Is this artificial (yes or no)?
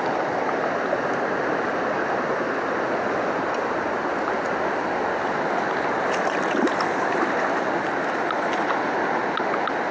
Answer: no